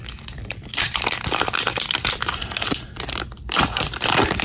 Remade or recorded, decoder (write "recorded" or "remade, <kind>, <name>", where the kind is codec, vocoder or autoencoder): remade, vocoder, BigVGAN v2